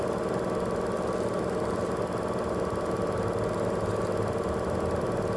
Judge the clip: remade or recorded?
recorded